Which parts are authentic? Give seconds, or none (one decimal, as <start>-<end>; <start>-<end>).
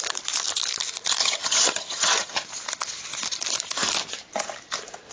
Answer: 0.0-1.2; 2.4-5.1